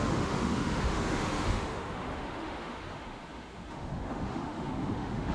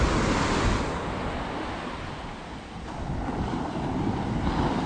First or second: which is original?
second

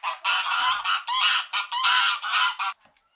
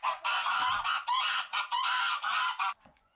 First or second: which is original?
first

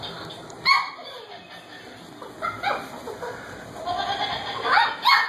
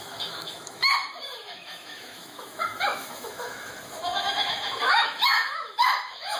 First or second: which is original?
first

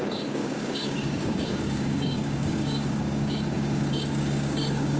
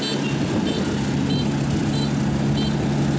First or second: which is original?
second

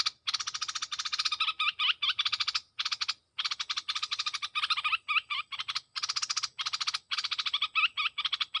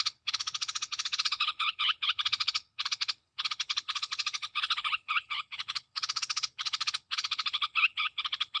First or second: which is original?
first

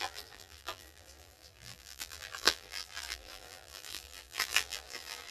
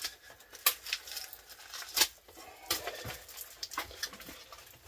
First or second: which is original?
second